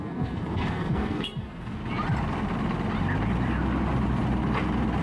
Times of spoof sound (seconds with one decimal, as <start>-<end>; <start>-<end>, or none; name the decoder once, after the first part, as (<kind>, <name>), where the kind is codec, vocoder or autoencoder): 0.0-1.8 (codec, SNAC)